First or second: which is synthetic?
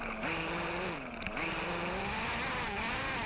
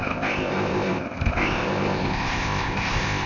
second